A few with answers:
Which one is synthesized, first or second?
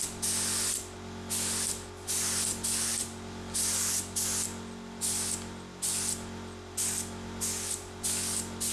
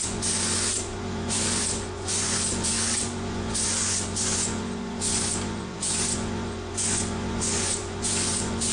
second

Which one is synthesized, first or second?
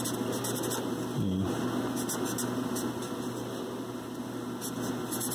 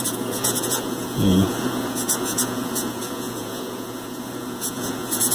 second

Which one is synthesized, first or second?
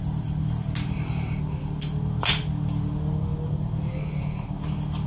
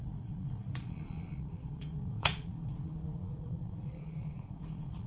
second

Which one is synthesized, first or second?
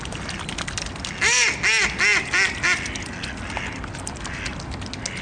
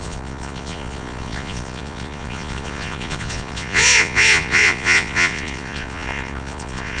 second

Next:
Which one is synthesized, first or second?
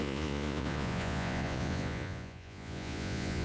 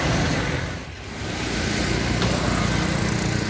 first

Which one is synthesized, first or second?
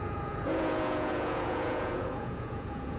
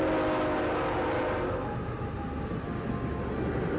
first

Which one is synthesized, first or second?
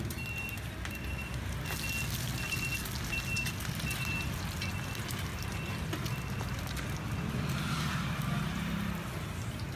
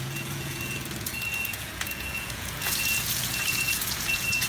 second